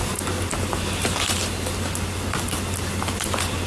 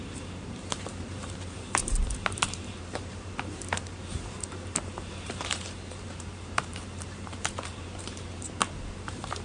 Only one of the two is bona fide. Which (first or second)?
first